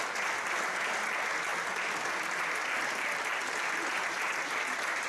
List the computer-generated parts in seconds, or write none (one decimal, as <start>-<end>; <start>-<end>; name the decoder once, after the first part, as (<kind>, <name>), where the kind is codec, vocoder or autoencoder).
none